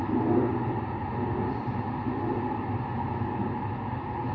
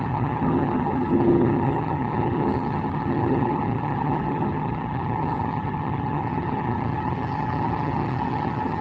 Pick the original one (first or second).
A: first